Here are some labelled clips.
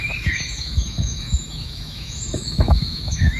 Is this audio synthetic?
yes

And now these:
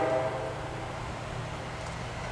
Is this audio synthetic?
no